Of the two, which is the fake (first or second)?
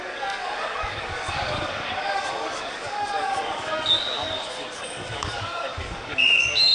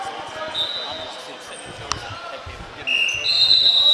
first